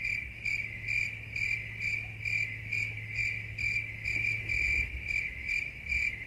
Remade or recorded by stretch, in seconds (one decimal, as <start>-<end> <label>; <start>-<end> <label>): 0.0-6.3 recorded

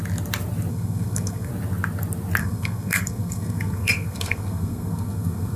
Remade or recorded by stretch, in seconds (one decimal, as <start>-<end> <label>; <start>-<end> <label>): 0.0-0.7 recorded; 0.7-1.5 remade; 1.5-2.4 recorded; 2.4-5.6 remade

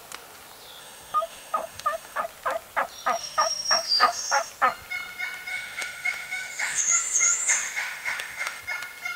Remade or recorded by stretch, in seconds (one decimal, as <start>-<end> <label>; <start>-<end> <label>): 0.0-0.8 recorded; 0.8-2.2 remade; 2.2-3.2 recorded; 3.2-4.5 remade; 4.5-5.5 recorded; 5.5-8.6 remade; 8.6-9.2 recorded

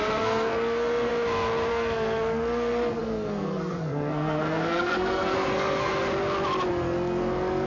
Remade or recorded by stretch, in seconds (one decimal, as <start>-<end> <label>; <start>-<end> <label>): 0.0-1.1 remade; 1.1-1.7 recorded; 1.7-5.9 remade; 5.9-6.7 recorded; 6.7-7.7 remade

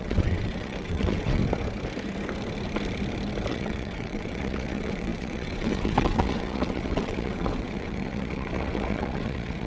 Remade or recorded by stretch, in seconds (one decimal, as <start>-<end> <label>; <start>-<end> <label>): 0.0-1.4 remade; 1.4-3.5 recorded; 3.5-9.7 remade

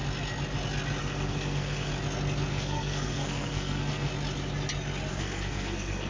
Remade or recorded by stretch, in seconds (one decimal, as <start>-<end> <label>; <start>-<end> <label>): 0.0-1.0 recorded; 1.0-1.9 remade; 1.9-2.5 recorded; 2.5-4.1 remade; 4.1-5.1 recorded; 5.1-6.1 remade